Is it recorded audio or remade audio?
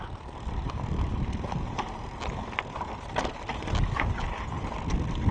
recorded